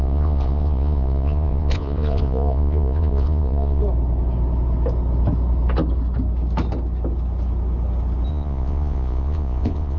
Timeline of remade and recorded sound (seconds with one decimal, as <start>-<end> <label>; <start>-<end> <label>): 0.0-3.8 remade; 3.8-8.3 recorded; 8.3-10.0 remade